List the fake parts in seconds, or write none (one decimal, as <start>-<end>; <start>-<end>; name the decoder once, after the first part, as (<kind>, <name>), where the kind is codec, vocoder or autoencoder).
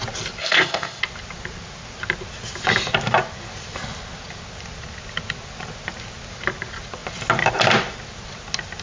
0.4-1.0 (codec, ZipCodec)